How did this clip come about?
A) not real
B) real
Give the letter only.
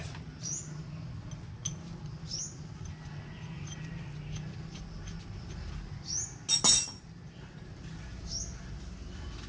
B